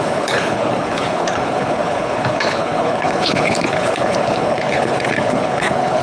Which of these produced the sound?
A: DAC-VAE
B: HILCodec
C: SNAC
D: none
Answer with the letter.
B